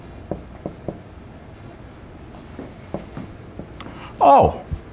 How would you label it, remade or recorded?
recorded